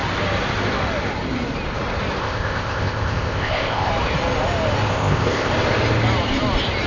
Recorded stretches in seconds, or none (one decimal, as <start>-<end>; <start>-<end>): 0.0-2.2; 3.9-4.9; 5.5-6.9